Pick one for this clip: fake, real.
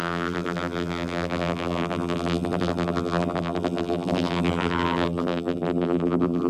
fake